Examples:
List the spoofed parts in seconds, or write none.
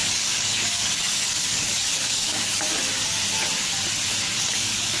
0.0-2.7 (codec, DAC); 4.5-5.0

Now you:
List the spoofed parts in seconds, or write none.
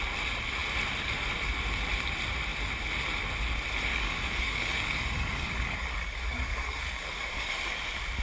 3.9-7.5 (codec, DAC)